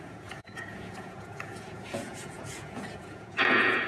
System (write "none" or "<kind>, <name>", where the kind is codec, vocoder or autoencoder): vocoder, Vocos